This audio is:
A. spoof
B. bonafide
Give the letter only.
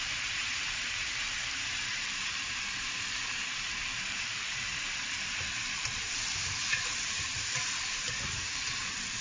A